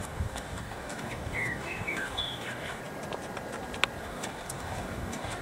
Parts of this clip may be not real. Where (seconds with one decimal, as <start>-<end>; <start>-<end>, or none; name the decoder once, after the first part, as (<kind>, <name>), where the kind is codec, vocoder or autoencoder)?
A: 0.0-2.8 (codec, DAC); 4.0-5.4